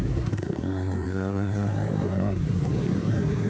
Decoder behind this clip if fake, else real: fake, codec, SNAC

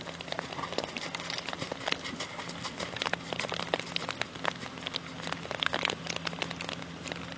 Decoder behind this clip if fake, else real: real